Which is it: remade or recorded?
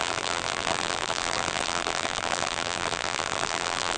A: remade